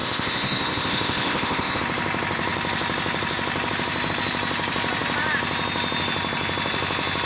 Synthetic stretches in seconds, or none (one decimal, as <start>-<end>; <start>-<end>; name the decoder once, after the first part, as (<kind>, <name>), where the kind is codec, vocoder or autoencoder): 0.0-1.8 (codec, ZipCodec)

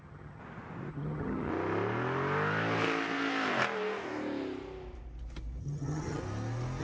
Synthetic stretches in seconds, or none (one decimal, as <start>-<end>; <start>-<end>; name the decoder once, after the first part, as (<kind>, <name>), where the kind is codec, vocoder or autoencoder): 0.0-0.4 (vocoder, HiFi-GAN); 0.9-1.5; 5.6-6.2

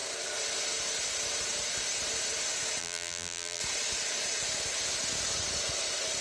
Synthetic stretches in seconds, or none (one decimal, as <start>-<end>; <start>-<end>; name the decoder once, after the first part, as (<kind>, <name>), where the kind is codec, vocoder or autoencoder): 2.8-3.6 (vocoder, BigVGAN v2)

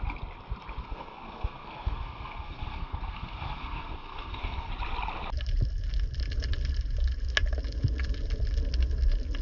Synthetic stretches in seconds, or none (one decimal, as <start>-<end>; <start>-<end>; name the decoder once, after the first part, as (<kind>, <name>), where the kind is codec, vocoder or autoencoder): 0.8-4.7 (codec, SNAC)

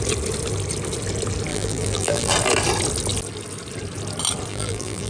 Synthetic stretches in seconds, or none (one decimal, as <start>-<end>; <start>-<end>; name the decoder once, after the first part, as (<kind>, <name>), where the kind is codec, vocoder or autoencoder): 1.5-2.3 (vocoder, BigVGAN v2); 4.5-5.1

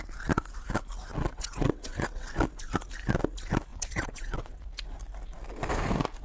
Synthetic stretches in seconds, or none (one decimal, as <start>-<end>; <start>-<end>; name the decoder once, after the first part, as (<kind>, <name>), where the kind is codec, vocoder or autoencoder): 1.1-2.3 (vocoder, WaveNeXt); 3.7-4.6

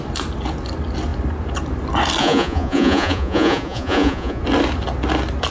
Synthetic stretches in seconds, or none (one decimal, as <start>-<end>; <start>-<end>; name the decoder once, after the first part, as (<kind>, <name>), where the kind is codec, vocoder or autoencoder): 2.2-4.4 (vocoder, Vocos)